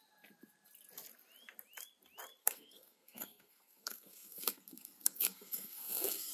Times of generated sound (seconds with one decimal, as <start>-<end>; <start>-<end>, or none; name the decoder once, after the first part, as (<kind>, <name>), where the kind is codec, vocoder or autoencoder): 2.4-6.3 (codec, SNAC)

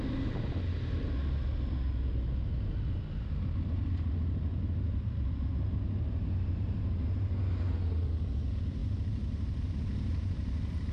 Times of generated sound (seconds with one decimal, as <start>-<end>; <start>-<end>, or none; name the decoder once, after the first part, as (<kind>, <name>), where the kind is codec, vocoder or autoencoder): none

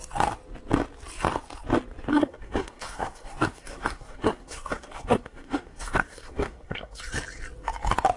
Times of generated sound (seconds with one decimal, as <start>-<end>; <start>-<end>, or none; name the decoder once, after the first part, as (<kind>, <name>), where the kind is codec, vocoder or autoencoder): 2.1-7.0 (codec, SNAC)